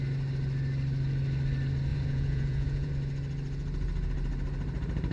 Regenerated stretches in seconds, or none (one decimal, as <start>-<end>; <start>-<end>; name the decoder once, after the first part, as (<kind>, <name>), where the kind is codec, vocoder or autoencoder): 1.9-2.9 (vocoder, Vocos)